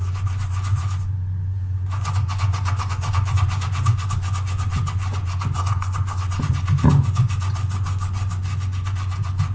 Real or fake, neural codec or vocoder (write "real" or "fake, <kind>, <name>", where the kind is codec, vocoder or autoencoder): fake, vocoder, Vocos